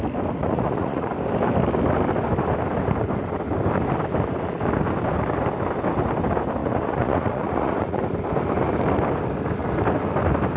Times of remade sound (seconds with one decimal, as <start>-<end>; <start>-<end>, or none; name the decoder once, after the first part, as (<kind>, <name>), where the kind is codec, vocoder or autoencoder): 0.4-1.1 (vocoder, Vocos); 6.6-8.0